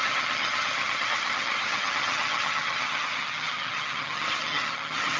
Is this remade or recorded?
remade